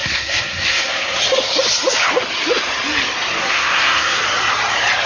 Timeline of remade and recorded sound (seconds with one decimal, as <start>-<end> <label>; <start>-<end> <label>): 0.0-1.2 remade; 1.2-3.4 recorded; 3.4-4.2 remade; 4.2-5.1 recorded